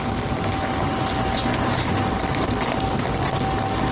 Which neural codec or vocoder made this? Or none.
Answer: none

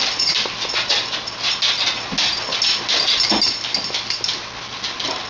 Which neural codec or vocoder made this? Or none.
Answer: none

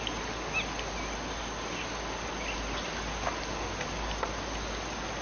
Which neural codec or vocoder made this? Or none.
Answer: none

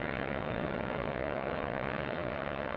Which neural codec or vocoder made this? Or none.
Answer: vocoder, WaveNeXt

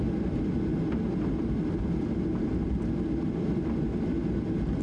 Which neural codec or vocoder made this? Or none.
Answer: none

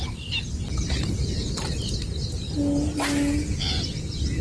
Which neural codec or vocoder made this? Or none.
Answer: none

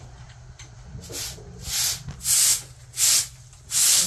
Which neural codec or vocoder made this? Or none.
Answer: none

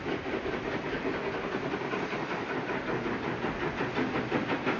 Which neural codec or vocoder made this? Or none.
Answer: none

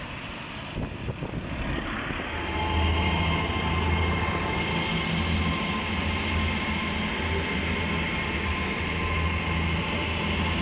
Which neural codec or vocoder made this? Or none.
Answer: none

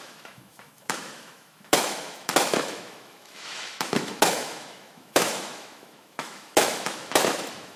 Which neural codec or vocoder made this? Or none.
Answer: autoencoder, DAC-VAE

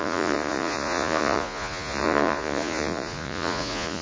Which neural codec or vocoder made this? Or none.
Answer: vocoder, Vocos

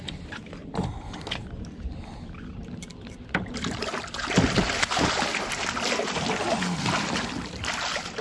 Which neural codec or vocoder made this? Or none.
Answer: none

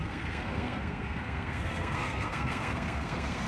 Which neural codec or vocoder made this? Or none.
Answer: codec, SNAC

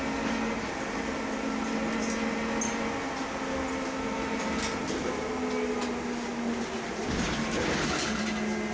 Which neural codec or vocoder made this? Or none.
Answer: none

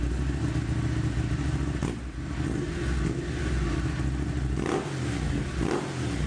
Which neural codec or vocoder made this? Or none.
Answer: none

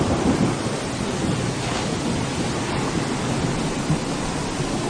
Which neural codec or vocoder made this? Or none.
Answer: none